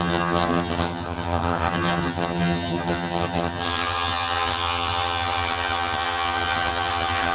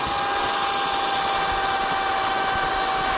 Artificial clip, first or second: first